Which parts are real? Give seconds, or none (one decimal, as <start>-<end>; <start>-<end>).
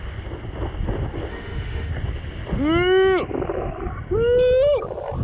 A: 0.0-1.3; 1.9-5.2